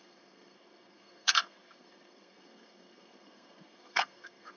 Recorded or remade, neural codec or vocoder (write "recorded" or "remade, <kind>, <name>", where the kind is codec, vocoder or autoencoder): remade, codec, SNAC